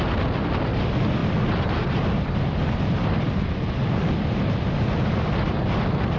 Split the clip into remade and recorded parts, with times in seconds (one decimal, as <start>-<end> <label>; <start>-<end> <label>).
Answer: 0.0-6.2 recorded